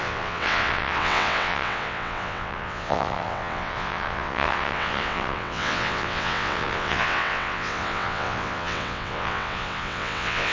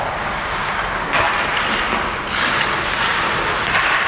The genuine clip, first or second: second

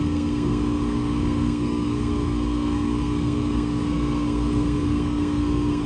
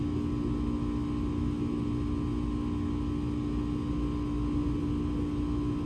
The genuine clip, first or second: second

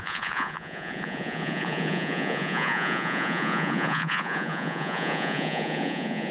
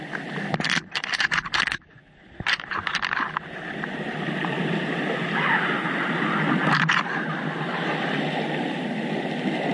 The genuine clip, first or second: second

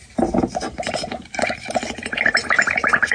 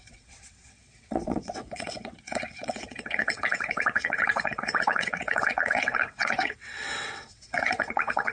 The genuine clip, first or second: first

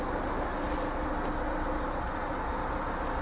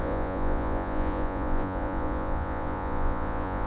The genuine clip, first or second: first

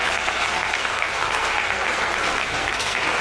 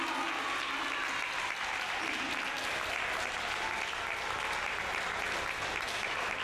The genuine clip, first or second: second